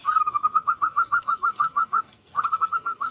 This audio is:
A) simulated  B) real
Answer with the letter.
A